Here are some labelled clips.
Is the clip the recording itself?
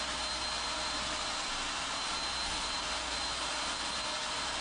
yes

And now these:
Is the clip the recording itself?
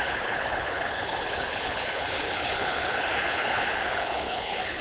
no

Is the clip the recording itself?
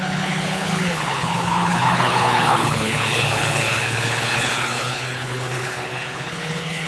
no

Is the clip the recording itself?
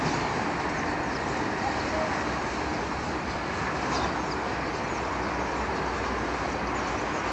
yes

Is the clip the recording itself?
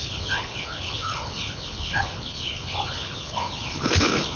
no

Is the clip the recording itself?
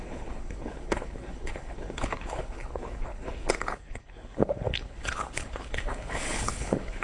no